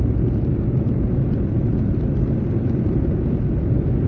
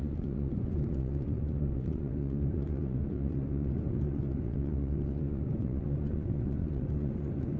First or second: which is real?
first